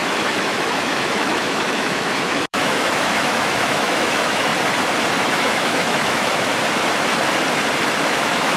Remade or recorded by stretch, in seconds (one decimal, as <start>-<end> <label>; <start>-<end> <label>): 0.0-4.5 remade; 4.5-5.2 recorded; 5.2-6.5 remade; 6.5-8.0 recorded; 8.0-8.6 remade